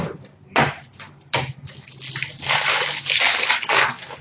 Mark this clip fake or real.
real